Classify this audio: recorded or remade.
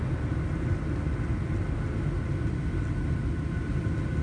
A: recorded